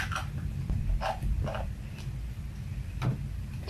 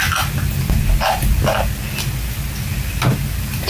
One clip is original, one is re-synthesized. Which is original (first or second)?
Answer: second